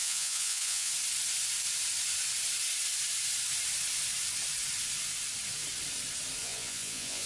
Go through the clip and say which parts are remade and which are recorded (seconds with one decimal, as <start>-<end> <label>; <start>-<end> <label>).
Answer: 0.0-0.9 remade; 0.9-6.4 recorded; 6.4-7.3 remade